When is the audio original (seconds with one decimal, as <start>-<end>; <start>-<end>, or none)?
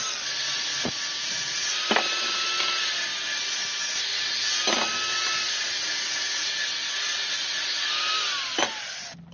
0.0-0.7; 2.7-9.3